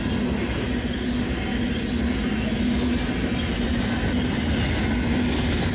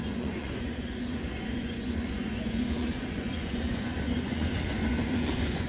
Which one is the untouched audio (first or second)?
first